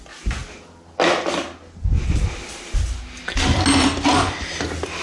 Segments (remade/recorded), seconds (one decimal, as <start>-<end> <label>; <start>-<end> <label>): 0.0-5.0 recorded